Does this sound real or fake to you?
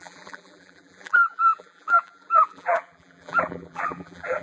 fake